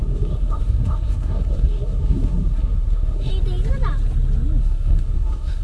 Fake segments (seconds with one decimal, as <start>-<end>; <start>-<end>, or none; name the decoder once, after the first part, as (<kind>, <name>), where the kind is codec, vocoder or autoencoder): 0.0-3.3 (codec, SNAC); 4.6-5.6